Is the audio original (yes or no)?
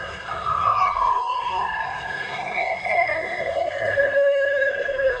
no